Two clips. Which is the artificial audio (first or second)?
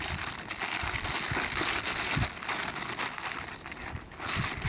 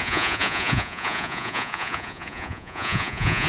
second